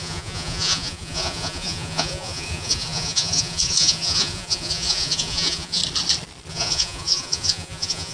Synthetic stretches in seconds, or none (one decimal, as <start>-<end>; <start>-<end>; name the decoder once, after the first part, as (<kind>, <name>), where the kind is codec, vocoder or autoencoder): 0.0-5.8 (vocoder, Vocos); 6.5-8.1